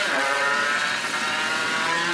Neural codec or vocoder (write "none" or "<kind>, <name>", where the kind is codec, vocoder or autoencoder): vocoder, WaveNeXt